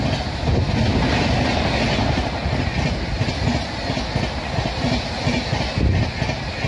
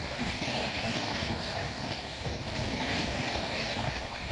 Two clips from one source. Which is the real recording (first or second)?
first